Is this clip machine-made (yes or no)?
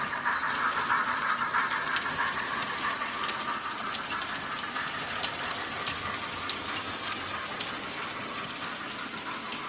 no